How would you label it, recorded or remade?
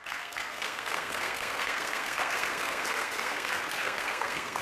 remade